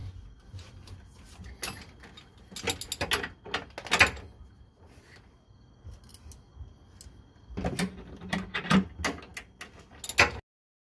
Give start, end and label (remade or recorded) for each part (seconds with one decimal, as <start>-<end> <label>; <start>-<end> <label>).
0.0-10.9 recorded